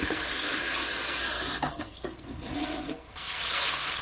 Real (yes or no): no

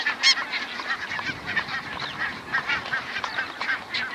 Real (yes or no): yes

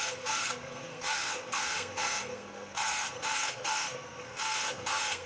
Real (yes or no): no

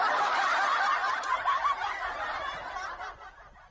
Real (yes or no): yes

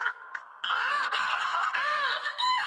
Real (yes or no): no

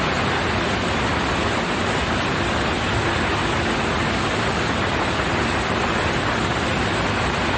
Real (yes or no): yes